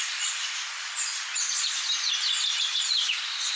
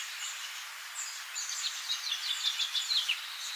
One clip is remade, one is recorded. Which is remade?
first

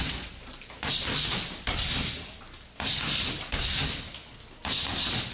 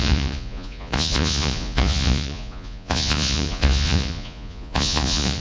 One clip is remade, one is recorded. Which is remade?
second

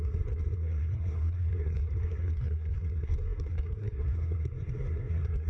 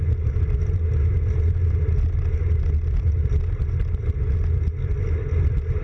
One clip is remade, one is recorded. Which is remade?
first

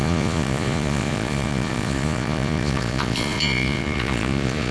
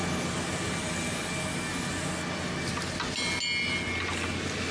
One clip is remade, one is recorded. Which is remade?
first